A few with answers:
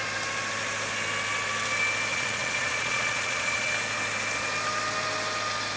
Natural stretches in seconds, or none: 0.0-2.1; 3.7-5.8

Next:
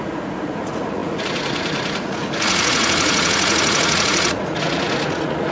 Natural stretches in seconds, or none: none

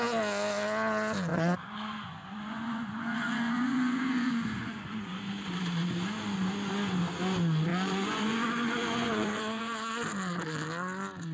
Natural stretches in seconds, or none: 0.0-1.3; 5.2-7.7; 9.9-11.3

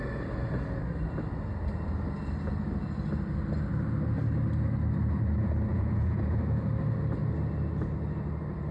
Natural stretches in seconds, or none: 0.0-5.7; 6.4-8.7

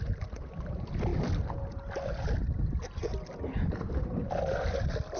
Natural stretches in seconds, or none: 0.0-5.2